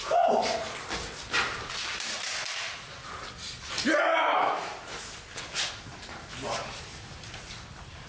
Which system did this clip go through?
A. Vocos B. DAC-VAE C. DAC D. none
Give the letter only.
D